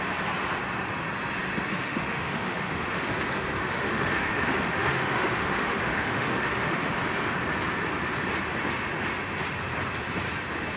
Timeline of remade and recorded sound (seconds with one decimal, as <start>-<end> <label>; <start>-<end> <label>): 0.0-1.7 recorded; 1.7-3.1 remade; 3.1-3.6 recorded; 3.6-6.9 remade; 6.9-10.8 recorded